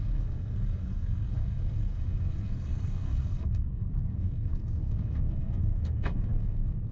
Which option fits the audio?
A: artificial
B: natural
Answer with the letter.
A